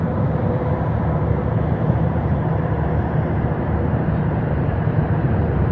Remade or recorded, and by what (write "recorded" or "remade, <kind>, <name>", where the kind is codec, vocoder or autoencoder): remade, vocoder, BigVGAN v2